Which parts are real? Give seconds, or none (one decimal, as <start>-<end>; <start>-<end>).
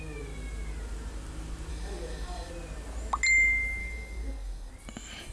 0.0-1.7; 2.5-3.8; 4.7-5.3